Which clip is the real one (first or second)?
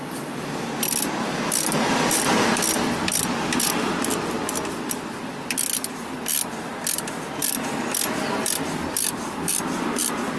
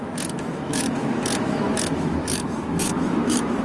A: first